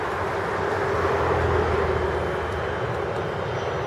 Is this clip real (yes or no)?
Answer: yes